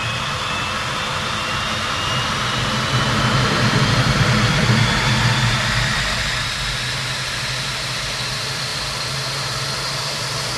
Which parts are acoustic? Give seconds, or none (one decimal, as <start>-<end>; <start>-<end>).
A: 0.0-10.6